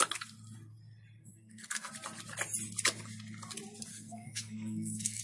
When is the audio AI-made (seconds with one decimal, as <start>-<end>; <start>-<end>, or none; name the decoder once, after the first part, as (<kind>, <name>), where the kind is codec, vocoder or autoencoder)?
1.2-1.9 (codec, SNAC); 3.9-5.2

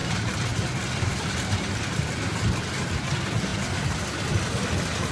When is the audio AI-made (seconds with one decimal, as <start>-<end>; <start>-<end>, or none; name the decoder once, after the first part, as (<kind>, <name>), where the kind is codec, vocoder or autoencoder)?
0.0-3.1 (vocoder, BigVGAN v2)